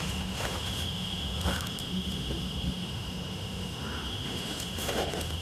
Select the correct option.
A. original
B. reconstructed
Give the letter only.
B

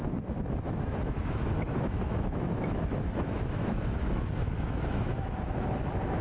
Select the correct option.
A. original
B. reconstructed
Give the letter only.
B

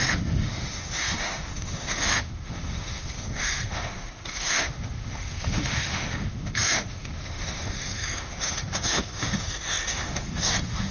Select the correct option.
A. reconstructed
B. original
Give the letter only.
A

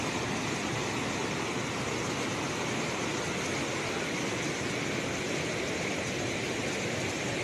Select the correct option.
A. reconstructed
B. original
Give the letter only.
B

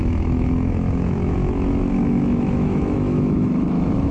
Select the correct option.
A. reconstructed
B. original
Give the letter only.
A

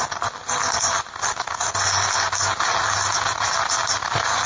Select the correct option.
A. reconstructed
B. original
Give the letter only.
B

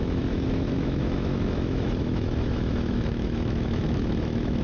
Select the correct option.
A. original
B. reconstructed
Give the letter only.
B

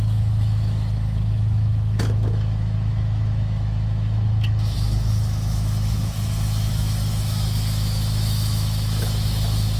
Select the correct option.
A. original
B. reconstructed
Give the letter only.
B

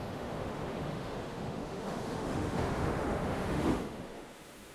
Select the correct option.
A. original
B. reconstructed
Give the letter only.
B